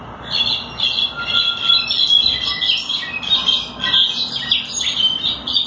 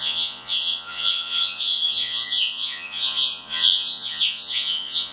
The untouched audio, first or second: first